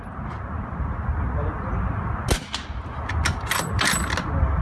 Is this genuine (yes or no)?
yes